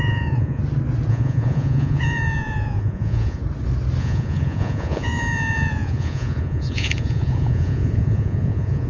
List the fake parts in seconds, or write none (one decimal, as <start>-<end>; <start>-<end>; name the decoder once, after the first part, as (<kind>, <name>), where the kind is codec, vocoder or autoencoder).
0.0-0.6 (vocoder, Vocos); 1.1-3.4; 4.0-8.9